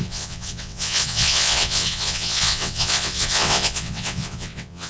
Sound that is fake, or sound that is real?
fake